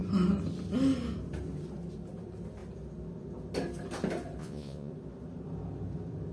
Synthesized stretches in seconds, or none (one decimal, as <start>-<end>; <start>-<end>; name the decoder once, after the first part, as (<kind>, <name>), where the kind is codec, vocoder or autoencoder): 4.4-4.9 (vocoder, Vocos)